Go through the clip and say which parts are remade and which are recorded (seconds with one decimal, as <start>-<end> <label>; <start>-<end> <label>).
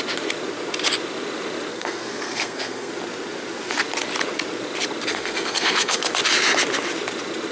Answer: 0.0-1.7 recorded; 1.7-2.9 remade; 2.9-5.1 recorded; 5.1-6.1 remade; 6.1-7.5 recorded